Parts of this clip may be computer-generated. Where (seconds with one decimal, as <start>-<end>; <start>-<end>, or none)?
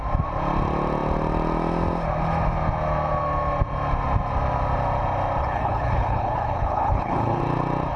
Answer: 5.4-7.4